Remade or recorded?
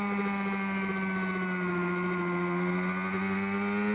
recorded